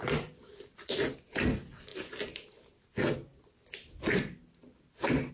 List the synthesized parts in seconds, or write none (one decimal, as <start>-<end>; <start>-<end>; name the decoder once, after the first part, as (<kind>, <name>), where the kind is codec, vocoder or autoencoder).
none